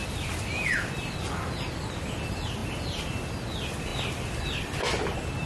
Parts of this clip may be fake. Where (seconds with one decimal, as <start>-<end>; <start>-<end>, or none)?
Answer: 0.0-0.5; 3.9-5.0